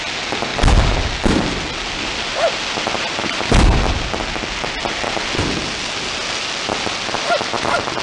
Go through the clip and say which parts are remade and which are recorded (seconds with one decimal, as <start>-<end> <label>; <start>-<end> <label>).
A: 0.0-8.0 recorded